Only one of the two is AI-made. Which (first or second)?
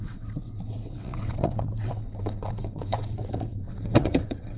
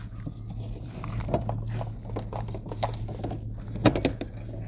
first